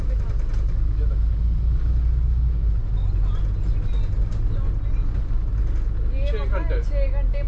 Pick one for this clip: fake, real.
real